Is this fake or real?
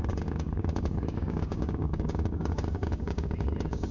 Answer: fake